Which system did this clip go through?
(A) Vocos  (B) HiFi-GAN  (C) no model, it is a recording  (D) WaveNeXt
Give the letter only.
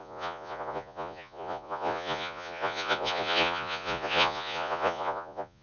A